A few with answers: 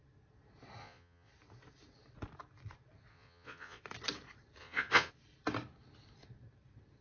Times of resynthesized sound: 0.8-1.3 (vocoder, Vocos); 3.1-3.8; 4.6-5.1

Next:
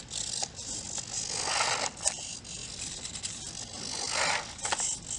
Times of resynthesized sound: none

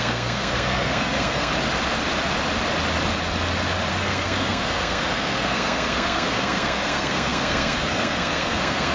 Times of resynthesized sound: 0.0-1.5 (codec, SNAC); 3.9-8.9

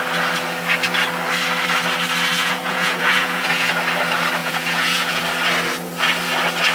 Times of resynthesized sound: 2.4-3.7 (vocoder, Vocos); 4.4-5.2

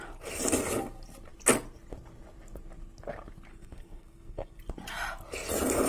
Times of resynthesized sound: 3.5-4.6 (codec, SNAC)

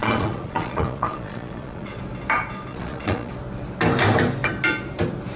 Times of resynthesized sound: 0.0-1.9 (vocoder, Vocos); 2.7-3.3

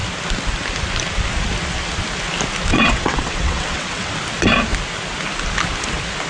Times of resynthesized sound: 2.7-4.1 (vocoder, WaveNeXt)